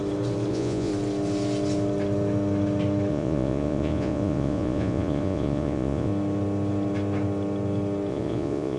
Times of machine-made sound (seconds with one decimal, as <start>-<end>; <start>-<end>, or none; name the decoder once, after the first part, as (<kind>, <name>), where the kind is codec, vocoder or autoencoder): 0.5-0.9 (vocoder, Vocos); 3.1-6.1; 8.1-8.8